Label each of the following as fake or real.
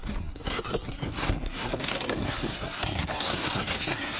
fake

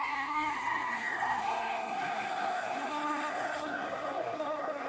fake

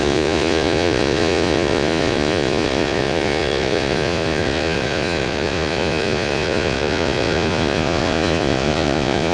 fake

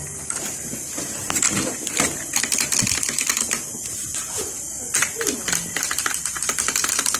real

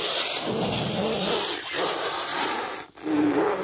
real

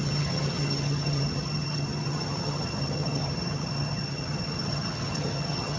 fake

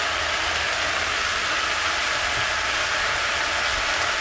real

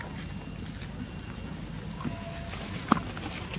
real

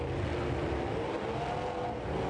real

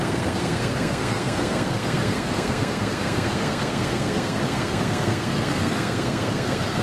fake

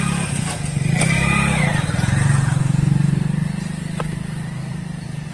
real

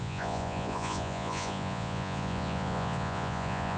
fake